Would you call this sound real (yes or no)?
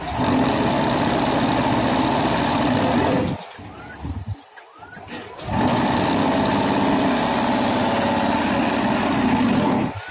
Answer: yes